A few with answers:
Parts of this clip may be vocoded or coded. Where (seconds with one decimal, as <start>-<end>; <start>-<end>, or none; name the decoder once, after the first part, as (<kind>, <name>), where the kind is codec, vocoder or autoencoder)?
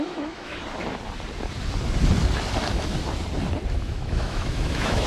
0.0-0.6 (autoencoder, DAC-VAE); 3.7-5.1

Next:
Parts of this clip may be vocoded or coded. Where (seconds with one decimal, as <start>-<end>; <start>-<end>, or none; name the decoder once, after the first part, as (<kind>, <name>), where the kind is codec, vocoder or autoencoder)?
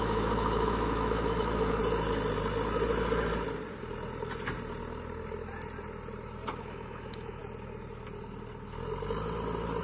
0.0-1.8 (autoencoder, DAC-VAE); 6.6-7.4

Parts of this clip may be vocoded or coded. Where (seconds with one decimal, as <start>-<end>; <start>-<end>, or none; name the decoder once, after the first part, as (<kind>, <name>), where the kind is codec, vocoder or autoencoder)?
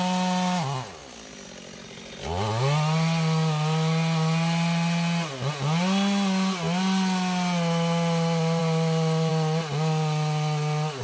none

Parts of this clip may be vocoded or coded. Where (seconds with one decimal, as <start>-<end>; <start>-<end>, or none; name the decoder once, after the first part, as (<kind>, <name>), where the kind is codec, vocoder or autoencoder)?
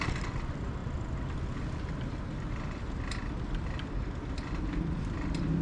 none